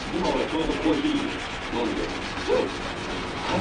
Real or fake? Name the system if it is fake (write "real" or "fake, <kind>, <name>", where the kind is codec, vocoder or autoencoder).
fake, vocoder, Vocos